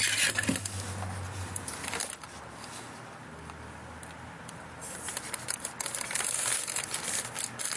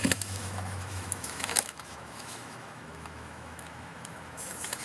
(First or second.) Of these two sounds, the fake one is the second